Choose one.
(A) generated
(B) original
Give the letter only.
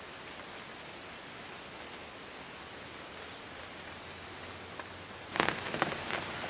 B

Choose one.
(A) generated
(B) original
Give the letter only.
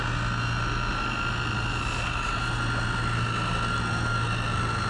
B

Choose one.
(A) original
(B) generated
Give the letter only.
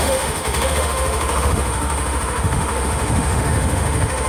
B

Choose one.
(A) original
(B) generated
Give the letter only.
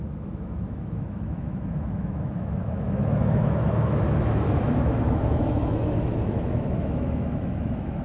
B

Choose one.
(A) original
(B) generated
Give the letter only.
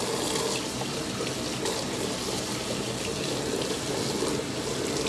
A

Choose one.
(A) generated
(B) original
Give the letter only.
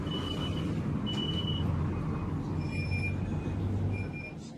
B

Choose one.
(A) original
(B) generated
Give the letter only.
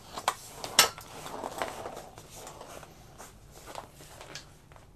A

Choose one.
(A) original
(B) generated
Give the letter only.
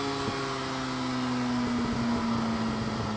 A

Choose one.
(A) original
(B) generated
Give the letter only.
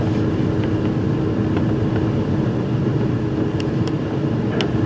A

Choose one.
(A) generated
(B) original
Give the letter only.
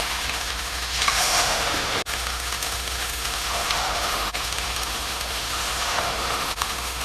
A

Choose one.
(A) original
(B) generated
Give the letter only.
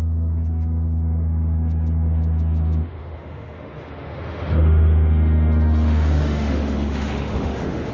B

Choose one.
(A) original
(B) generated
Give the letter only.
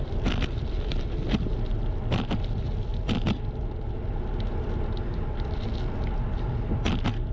A